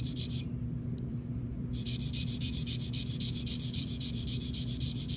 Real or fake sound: fake